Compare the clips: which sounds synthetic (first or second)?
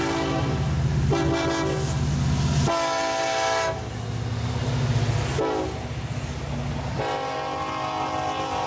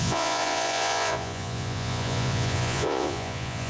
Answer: second